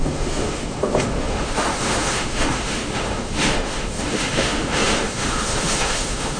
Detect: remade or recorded remade